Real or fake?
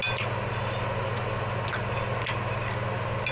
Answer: real